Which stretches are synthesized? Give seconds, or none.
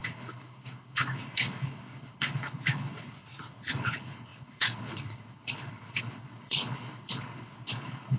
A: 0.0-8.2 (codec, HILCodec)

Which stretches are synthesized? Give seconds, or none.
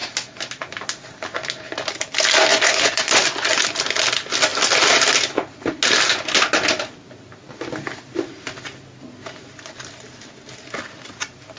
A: 2.5-3.5 (vocoder, Vocos)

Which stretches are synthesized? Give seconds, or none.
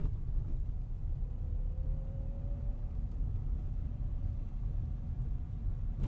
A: 2.7-4.4 (vocoder, BigVGAN v2)